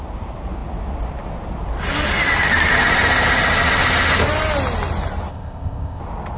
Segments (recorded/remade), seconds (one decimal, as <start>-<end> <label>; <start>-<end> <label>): 0.0-5.3 recorded; 5.3-6.0 remade; 6.0-6.4 recorded